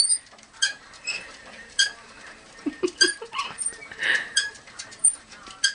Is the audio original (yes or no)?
no